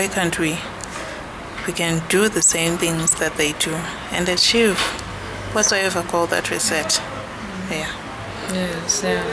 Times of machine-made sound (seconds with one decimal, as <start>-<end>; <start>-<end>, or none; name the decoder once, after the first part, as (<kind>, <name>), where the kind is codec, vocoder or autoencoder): 5.1-5.7 (autoencoder, DAC-VAE)